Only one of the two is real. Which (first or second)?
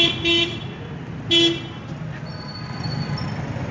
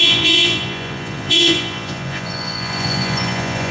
first